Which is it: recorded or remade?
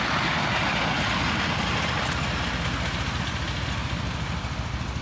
recorded